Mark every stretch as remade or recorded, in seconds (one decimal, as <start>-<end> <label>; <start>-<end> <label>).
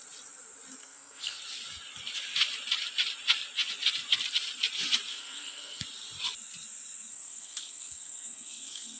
0.0-0.8 recorded; 0.8-1.4 remade; 1.4-5.1 recorded; 5.1-5.8 remade; 5.8-7.1 recorded; 7.1-9.0 remade